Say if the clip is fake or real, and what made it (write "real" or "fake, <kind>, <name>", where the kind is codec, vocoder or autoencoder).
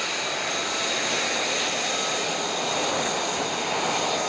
real